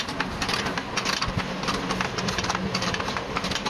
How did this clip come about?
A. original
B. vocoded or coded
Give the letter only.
A